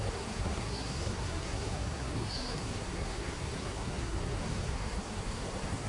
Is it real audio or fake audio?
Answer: fake